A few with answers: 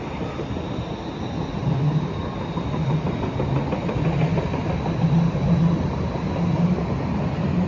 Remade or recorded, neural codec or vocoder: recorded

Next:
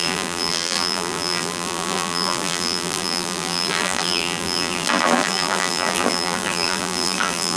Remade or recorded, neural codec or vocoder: remade, vocoder, BigVGAN v2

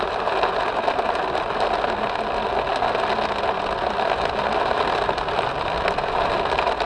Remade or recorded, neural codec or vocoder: recorded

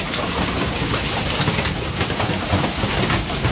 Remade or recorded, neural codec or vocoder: recorded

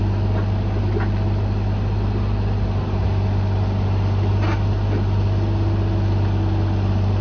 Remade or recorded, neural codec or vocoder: recorded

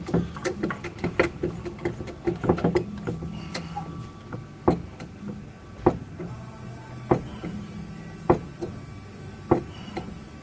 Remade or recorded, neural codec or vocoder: recorded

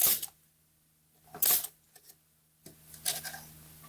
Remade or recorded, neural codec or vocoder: recorded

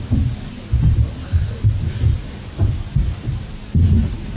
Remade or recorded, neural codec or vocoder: recorded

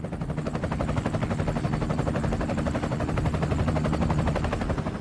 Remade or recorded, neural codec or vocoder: recorded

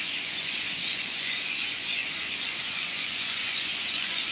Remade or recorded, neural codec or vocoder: remade, vocoder, Vocos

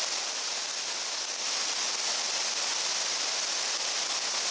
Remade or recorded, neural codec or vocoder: recorded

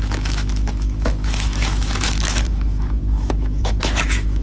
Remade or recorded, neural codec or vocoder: remade, autoencoder, DAC-VAE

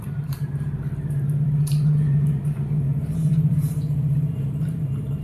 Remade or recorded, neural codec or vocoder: remade, vocoder, BigVGAN v2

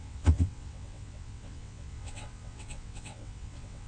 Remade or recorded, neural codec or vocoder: remade, vocoder, WaveNeXt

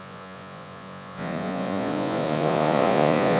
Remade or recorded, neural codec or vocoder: remade, vocoder, Vocos